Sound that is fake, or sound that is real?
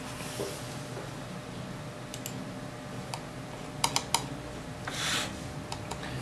real